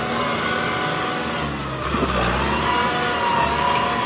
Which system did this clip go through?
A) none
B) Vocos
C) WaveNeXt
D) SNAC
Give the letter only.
A